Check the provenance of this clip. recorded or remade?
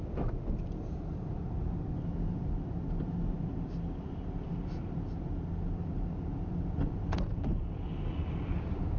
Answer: recorded